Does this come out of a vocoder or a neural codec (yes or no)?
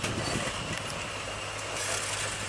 no